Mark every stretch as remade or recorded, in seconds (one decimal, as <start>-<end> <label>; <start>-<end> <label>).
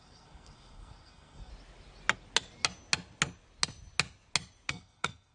0.0-1.5 remade; 1.5-4.7 recorded; 4.7-5.3 remade